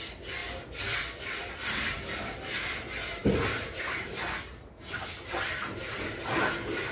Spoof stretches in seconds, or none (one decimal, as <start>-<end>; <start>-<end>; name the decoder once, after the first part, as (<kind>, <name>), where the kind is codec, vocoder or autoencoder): none